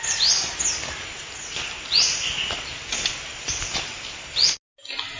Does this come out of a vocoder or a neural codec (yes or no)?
no